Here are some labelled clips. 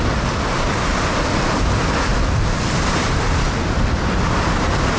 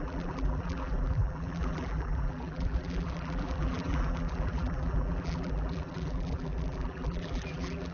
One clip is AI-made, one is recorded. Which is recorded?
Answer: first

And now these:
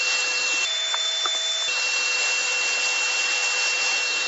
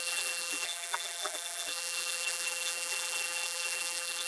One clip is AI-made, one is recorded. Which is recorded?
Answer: first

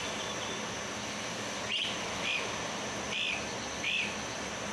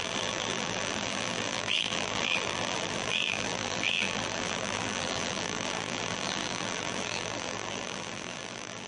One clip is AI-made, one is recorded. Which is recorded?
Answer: first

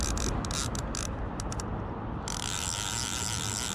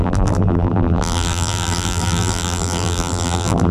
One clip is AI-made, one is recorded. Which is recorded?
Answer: first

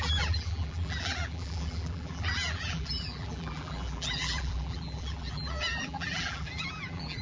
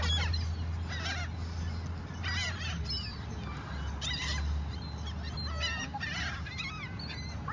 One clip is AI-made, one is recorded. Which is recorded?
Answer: second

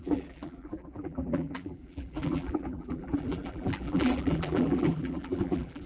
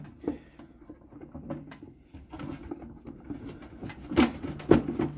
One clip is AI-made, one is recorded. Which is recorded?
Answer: second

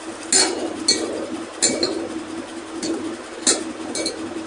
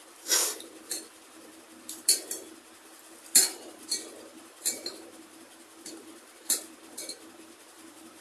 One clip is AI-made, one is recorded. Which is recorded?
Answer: first